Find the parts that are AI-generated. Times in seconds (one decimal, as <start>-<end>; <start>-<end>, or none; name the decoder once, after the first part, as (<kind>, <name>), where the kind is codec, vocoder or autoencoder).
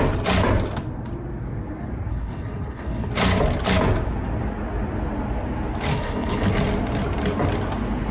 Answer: 2.1-3.1 (codec, HILCodec); 5.9-6.5